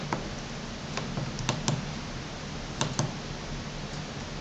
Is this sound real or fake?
real